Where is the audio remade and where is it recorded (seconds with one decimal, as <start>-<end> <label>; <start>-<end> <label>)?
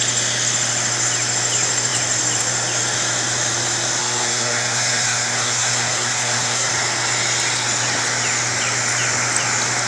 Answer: 0.0-4.0 recorded; 4.0-6.7 remade; 6.7-9.9 recorded